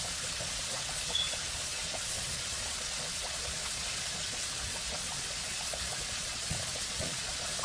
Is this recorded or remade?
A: remade